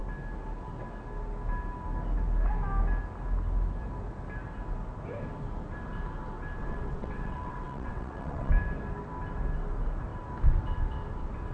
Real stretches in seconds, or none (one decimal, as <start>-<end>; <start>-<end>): 0.0-6.6; 8.5-11.5